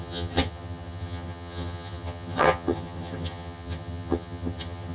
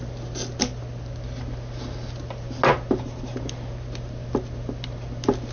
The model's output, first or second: first